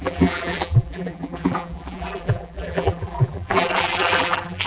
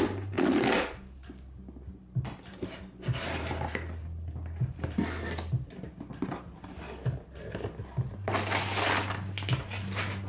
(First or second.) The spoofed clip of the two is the first